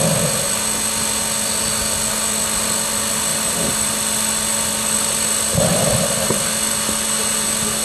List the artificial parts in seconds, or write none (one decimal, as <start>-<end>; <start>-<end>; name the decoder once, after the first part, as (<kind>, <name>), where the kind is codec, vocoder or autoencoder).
3.3-6.5 (vocoder, BigVGAN v2)

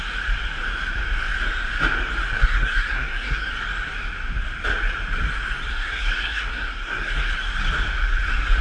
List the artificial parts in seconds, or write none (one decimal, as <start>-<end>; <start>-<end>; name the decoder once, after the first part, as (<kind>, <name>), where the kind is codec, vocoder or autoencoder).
2.2-3.5 (codec, SNAC); 5.7-7.3

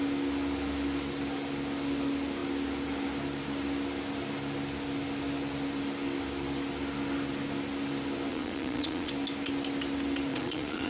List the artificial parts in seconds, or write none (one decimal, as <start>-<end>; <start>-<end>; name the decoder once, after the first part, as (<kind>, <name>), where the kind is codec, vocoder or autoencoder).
8.3-9.1 (vocoder, Vocos); 10.3-10.9

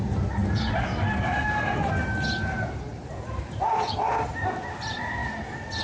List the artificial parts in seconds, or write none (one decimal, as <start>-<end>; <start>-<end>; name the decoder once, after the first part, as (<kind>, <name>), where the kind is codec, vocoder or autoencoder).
none

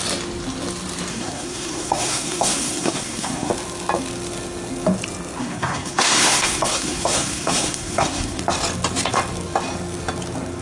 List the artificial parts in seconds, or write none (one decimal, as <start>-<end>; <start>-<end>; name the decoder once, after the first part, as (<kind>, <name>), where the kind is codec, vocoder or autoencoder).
1.1-3.5 (codec, SNAC); 5.4-8.4